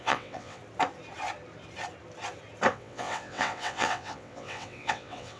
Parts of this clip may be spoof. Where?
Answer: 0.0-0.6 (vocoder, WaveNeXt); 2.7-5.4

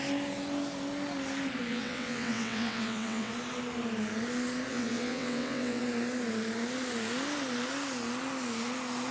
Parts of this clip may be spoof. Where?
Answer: 1.7-3.3 (vocoder, WaveNeXt); 4.7-5.8

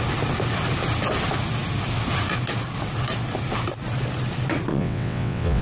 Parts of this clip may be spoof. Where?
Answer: 4.7-5.6 (vocoder, WaveNeXt)

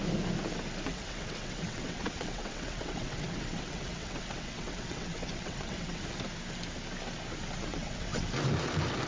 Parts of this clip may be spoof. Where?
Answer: 0.9-6.0 (vocoder, WaveNeXt); 7.7-8.3